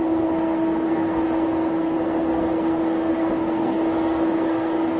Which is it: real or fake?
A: fake